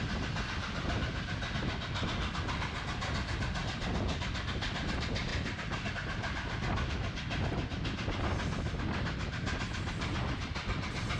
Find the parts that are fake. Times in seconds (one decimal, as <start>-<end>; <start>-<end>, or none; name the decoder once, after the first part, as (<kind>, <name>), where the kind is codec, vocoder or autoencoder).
none